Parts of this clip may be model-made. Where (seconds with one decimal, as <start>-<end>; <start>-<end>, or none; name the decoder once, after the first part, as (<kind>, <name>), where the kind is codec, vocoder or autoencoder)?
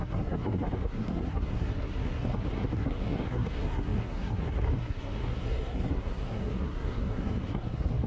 0.0-8.1 (codec, SNAC)